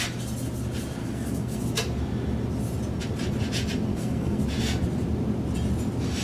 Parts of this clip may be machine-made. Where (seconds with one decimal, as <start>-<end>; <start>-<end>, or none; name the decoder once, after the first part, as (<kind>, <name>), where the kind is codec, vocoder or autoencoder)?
1.0-1.6 (codec, SNAC); 3.9-4.4

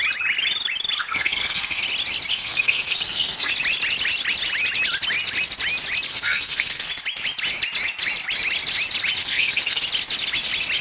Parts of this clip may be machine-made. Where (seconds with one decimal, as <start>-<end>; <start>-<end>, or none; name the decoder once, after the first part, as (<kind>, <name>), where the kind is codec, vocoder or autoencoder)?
1.0-1.8 (codec, SNAC); 2.3-3.5; 6.1-6.9; 9.2-9.8

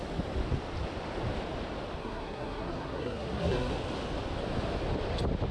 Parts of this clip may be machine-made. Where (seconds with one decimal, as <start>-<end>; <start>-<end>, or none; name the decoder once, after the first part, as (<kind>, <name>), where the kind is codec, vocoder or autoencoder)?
2.0-3.7 (codec, SNAC)

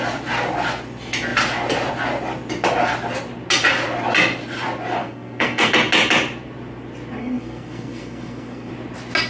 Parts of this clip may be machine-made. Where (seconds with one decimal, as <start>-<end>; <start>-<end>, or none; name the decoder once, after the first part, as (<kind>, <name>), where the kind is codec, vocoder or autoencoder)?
5.0-5.7 (codec, SNAC); 7.2-8.7